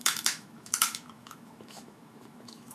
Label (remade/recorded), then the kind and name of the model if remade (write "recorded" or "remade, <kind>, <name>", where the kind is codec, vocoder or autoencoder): remade, autoencoder, DAC-VAE